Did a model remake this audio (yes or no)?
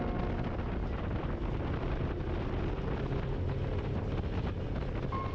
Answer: no